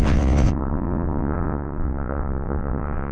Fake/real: fake